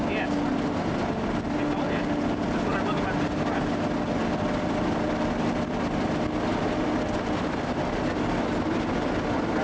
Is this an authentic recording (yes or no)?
yes